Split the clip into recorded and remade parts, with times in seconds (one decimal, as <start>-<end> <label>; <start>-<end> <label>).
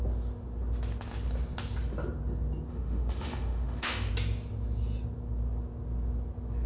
0.0-2.7 recorded; 2.7-4.1 remade; 4.1-6.7 recorded